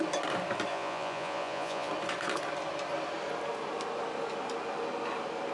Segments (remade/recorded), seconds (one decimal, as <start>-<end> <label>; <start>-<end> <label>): 0.0-0.7 recorded; 0.7-1.9 remade; 1.9-5.5 recorded